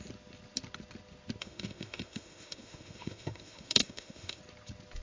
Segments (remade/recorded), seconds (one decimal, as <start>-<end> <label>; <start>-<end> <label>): 0.0-1.4 recorded; 1.4-4.4 remade; 4.4-5.0 recorded